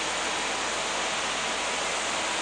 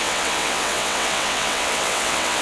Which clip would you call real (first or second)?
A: first